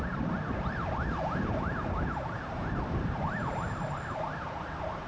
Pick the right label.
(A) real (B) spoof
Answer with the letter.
B